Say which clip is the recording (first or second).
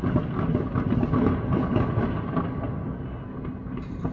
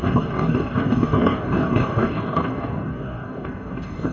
first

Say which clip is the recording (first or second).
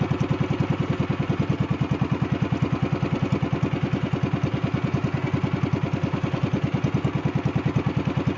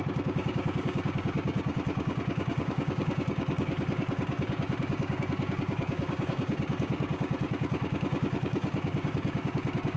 first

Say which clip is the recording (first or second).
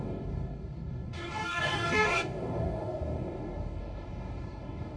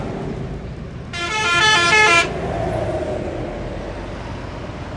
second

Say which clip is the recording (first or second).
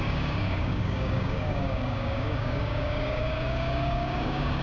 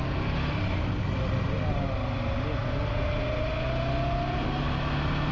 second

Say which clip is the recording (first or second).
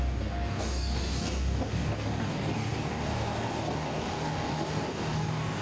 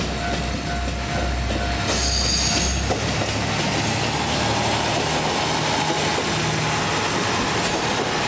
second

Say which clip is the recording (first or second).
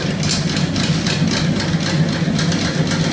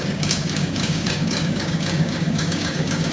first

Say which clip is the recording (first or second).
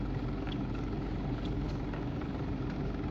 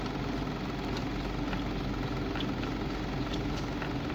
second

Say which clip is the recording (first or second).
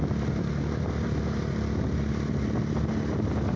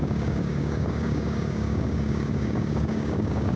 first